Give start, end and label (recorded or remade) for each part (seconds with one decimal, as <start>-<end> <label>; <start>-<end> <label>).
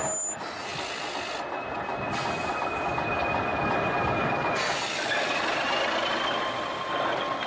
0.0-7.5 recorded